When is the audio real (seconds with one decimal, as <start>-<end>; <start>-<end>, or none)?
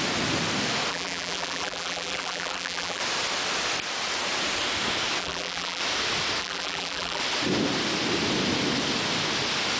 0.0-0.9; 3.0-5.2; 5.8-6.4; 7.2-9.8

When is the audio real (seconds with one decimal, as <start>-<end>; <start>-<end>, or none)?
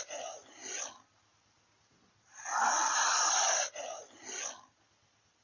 0.0-5.4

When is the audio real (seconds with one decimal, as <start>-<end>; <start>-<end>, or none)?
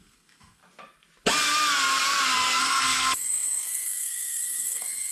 0.6-2.6